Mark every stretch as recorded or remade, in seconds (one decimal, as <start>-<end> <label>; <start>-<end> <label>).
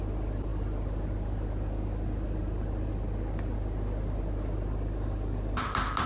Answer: 0.0-6.1 recorded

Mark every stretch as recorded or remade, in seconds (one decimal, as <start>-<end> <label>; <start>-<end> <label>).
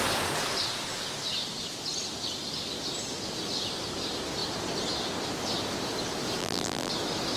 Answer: 0.0-6.4 recorded; 6.4-6.9 remade; 6.9-7.4 recorded